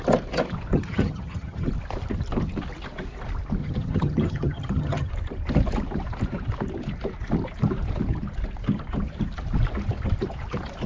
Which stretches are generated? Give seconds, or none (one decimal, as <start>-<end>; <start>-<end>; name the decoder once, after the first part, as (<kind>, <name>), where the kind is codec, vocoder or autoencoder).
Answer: 0.7-1.7 (vocoder, HiFi-GAN); 3.6-5.1